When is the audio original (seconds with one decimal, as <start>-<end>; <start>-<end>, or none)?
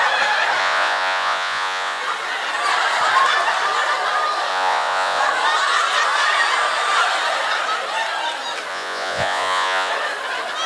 0.0-0.6; 2.0-4.5; 5.2-8.7; 9.9-10.7